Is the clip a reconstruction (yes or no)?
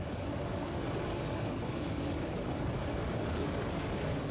yes